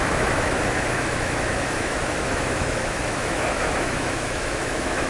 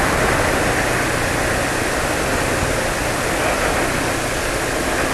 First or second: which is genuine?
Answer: second